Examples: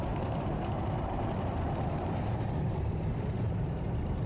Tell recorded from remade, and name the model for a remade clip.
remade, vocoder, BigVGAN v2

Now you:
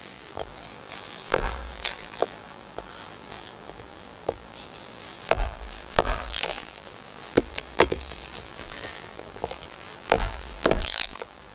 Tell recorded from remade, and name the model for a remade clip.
remade, vocoder, BigVGAN v2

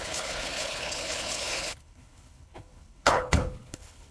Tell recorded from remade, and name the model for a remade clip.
remade, codec, HILCodec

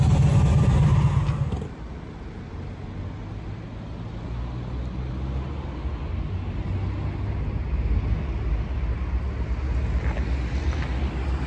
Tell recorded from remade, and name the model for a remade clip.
recorded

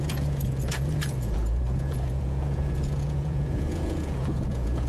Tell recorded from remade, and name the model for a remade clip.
remade, vocoder, Vocos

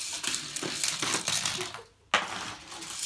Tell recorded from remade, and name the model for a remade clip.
recorded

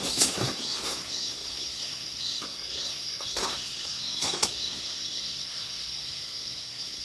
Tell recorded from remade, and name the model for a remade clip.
remade, codec, SNAC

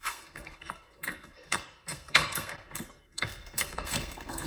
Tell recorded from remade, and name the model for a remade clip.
remade, codec, SNAC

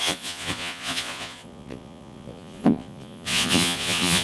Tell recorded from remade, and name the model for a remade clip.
remade, vocoder, Vocos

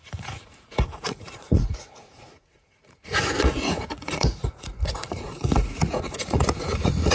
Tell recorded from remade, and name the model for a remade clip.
remade, vocoder, Vocos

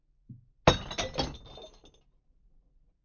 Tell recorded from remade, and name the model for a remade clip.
recorded